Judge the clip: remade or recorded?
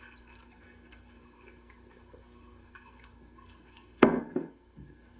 remade